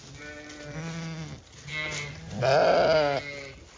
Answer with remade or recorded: recorded